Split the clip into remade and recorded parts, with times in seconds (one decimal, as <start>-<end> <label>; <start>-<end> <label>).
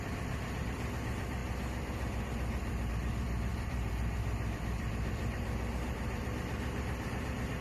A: 0.0-7.6 remade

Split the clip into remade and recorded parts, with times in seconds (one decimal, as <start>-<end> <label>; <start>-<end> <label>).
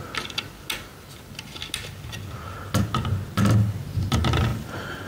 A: 0.0-4.5 recorded; 4.5-5.1 remade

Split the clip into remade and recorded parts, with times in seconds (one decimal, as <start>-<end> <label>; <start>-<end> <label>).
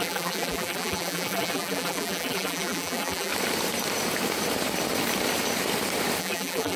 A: 0.0-3.3 remade; 3.3-6.2 recorded; 6.2-6.8 remade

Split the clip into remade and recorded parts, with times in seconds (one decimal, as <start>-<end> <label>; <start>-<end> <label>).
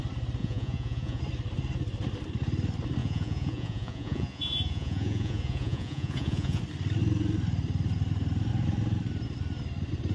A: 0.0-0.4 recorded; 0.4-1.2 remade; 1.2-3.0 recorded; 3.0-6.6 remade; 6.6-10.1 recorded